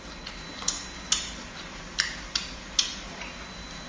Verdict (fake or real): real